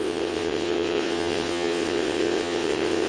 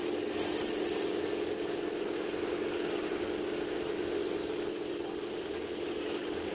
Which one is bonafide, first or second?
second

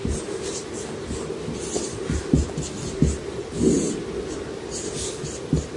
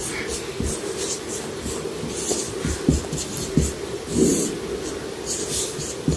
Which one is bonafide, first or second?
first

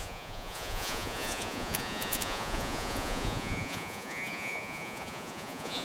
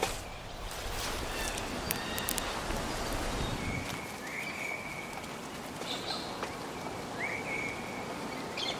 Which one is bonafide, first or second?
second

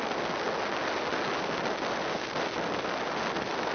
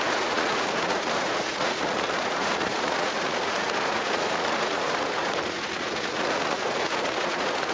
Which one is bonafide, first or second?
first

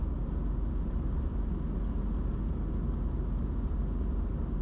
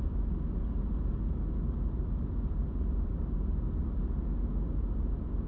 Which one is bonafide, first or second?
first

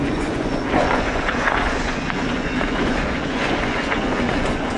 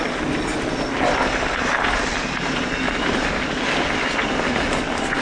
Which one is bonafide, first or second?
second